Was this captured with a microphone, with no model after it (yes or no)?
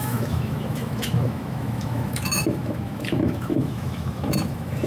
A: no